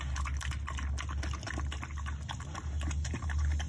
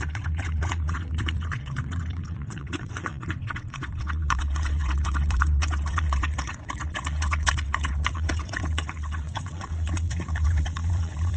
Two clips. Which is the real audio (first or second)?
first